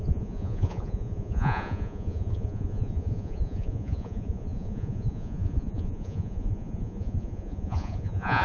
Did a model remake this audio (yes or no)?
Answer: yes